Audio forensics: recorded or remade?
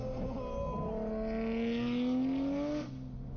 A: recorded